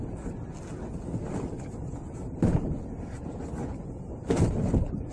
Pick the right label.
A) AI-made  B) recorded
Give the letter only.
B